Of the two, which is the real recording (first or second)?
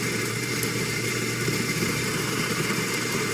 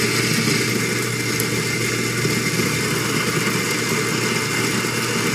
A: second